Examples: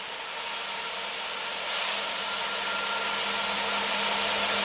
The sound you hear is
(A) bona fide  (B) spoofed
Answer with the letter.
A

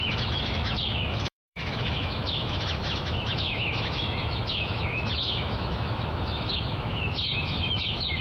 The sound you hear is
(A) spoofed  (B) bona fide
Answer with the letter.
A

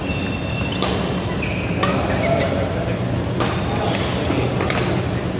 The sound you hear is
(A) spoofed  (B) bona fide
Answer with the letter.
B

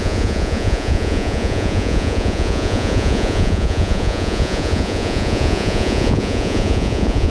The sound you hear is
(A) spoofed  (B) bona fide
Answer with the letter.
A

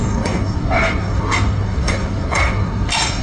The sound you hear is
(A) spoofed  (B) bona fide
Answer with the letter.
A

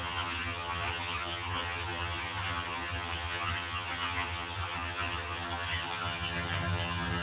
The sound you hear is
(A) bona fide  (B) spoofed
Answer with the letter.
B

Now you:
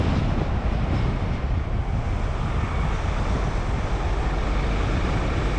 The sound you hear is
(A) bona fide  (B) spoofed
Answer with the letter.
A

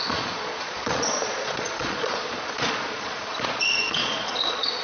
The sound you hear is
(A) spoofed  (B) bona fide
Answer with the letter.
A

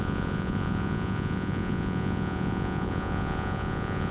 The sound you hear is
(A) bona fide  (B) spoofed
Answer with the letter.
B